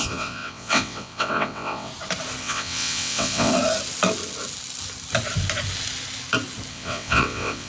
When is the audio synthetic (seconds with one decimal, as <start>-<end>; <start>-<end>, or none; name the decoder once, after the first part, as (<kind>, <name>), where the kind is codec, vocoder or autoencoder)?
0.0-1.9 (vocoder, WaveNeXt); 2.4-3.5; 6.7-7.7